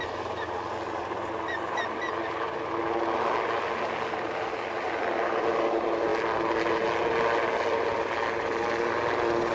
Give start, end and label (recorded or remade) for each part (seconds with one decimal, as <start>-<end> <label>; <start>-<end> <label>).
0.0-9.5 recorded